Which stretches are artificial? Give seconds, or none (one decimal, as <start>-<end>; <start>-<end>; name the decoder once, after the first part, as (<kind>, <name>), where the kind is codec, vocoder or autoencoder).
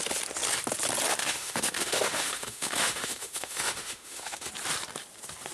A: 1.2-4.5 (autoencoder, DAC-VAE)